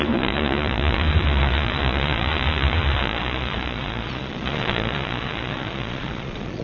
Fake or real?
fake